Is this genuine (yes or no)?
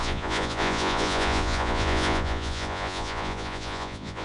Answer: no